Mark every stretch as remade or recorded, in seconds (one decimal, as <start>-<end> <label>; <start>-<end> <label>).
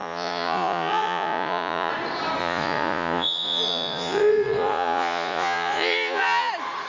0.0-1.9 remade; 1.9-2.4 recorded; 2.4-6.5 remade; 6.5-6.9 recorded